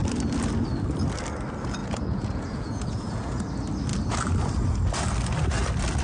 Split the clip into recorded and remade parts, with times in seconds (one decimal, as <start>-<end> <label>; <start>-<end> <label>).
0.0-1.8 recorded; 1.8-3.4 remade; 3.4-6.0 recorded